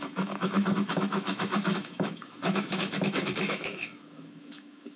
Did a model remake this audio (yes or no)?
yes